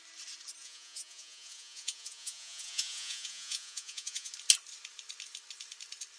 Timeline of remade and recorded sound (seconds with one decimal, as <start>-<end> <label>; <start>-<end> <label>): 0.0-0.6 recorded; 0.6-4.3 remade; 4.3-6.2 recorded